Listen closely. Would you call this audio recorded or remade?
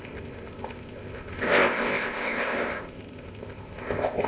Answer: remade